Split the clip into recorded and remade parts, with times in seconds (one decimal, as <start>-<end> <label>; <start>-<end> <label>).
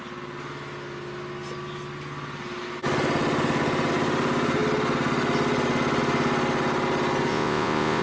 0.0-7.3 recorded; 7.3-8.0 remade